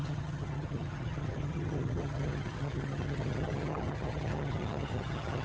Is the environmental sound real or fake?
fake